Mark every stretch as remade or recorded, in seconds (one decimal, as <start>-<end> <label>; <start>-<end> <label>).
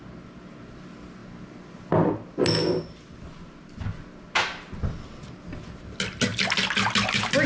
0.0-7.5 recorded